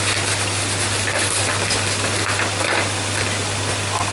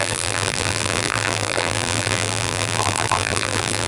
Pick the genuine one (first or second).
first